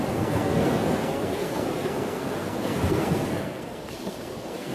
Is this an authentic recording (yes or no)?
no